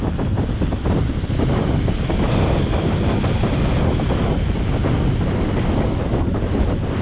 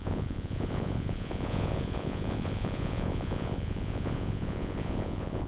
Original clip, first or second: first